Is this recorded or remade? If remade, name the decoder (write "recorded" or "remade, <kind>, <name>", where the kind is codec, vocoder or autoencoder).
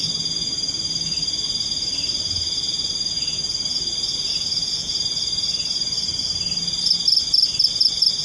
recorded